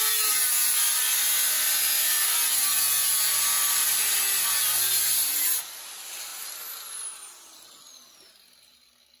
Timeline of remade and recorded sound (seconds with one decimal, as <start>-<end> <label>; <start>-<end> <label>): 0.0-9.2 recorded